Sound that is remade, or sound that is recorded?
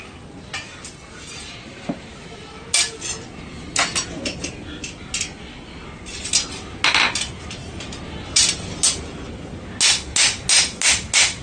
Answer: recorded